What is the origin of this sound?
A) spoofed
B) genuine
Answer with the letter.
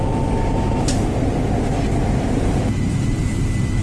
B